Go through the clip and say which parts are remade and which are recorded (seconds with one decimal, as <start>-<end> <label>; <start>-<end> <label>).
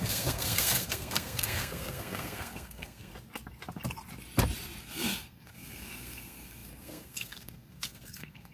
0.0-3.1 remade; 3.1-4.8 recorded; 4.8-8.5 remade